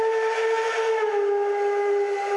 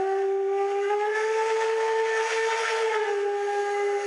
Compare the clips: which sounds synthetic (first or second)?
second